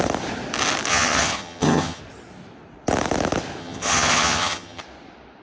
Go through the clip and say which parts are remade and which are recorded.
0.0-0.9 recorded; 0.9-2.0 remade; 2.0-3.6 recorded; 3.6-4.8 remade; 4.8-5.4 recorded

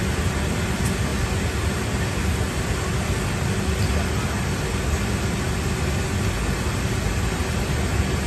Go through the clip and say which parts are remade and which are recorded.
0.0-8.3 recorded

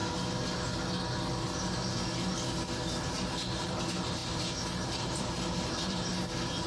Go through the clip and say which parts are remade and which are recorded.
0.0-3.0 recorded; 3.0-6.1 remade; 6.1-6.7 recorded

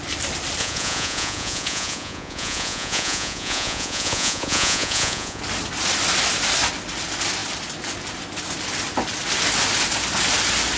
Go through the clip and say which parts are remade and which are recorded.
0.0-0.6 recorded; 0.6-5.4 remade; 5.4-10.8 recorded